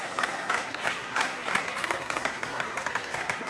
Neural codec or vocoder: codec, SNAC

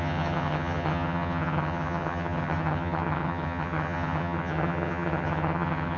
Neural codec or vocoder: vocoder, HiFi-GAN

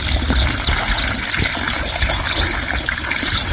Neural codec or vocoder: none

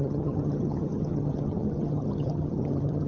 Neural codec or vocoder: vocoder, HiFi-GAN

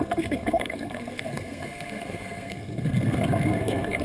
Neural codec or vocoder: codec, SNAC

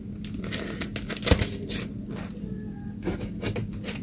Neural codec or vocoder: none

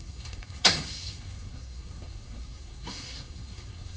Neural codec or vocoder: codec, SNAC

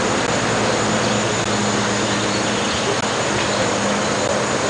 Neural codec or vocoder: none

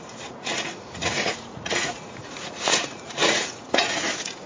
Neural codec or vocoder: vocoder, Vocos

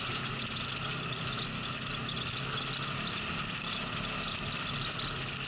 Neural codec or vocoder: none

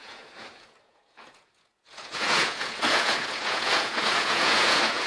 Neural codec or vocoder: vocoder, Vocos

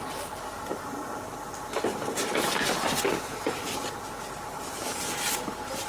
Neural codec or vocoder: vocoder, BigVGAN v2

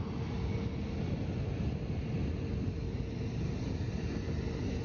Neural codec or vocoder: none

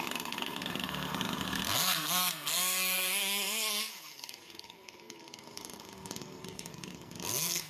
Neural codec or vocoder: codec, SNAC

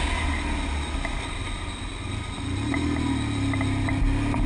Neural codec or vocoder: none